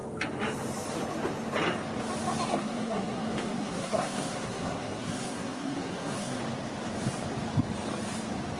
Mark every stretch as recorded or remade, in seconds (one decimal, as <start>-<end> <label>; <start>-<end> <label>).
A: 0.0-2.5 recorded; 2.5-6.4 remade; 6.4-8.6 recorded